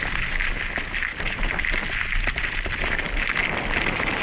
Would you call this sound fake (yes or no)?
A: no